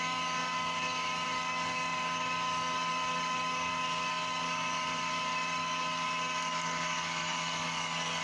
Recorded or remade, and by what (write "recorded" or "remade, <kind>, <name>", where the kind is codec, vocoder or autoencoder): remade, codec, DAC